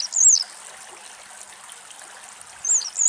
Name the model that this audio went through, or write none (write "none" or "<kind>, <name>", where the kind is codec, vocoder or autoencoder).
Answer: none